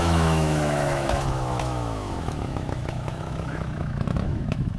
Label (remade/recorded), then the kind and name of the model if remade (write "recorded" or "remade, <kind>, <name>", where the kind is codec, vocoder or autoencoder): remade, autoencoder, DAC-VAE